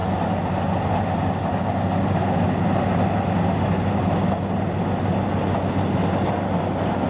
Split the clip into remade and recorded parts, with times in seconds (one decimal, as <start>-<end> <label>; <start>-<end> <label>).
0.0-7.1 recorded